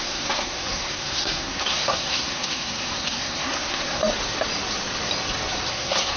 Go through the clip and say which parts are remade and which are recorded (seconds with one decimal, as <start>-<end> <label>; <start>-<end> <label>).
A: 0.0-4.0 remade; 4.0-5.7 recorded; 5.7-6.2 remade